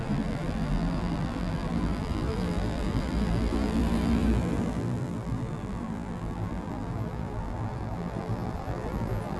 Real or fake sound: fake